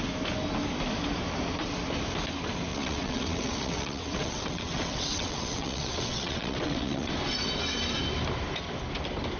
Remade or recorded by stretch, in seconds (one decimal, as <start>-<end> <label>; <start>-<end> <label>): 0.0-2.7 recorded; 2.7-7.1 remade; 7.1-9.4 recorded